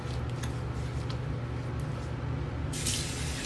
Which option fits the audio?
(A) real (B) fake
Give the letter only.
A